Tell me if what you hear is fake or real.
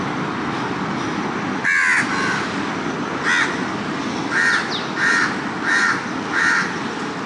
real